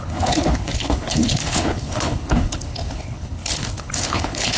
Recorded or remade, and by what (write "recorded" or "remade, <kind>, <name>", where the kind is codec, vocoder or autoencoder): remade, codec, HILCodec